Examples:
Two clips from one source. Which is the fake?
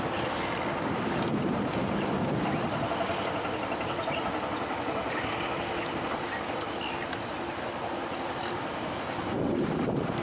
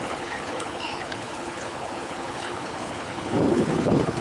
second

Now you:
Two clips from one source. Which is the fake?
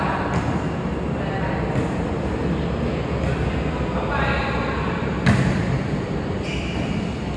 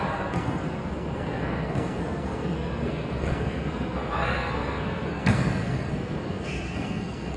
second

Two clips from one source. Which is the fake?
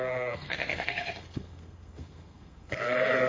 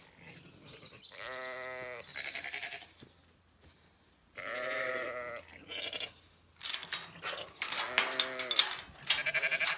first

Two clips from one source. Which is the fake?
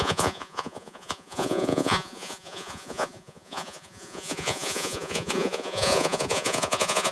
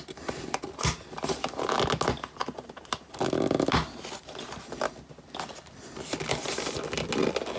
first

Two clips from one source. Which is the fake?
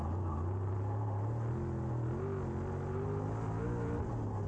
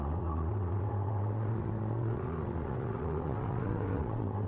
second